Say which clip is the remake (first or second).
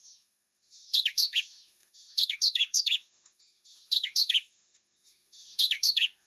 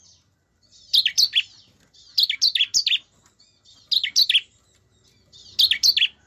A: first